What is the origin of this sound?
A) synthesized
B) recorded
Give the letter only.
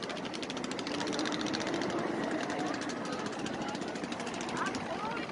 A